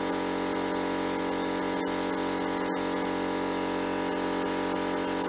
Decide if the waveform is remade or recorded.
recorded